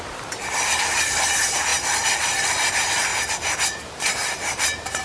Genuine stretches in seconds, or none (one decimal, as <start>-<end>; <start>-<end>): 3.1-4.1

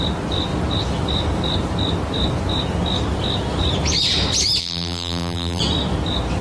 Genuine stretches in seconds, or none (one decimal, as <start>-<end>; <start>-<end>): 0.0-4.6; 5.6-6.4

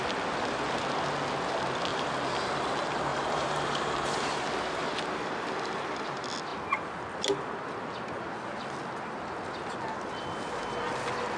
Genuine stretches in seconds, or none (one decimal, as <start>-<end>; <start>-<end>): 0.0-1.9; 2.5-3.1; 4.4-11.4

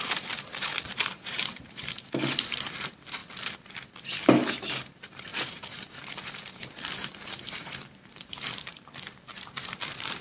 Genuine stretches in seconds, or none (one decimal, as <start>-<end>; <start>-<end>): 3.2-4.8; 8.7-9.3

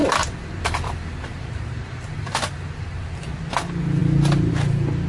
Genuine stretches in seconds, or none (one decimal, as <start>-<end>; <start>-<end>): 3.0-5.1